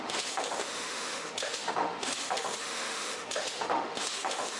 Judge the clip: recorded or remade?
remade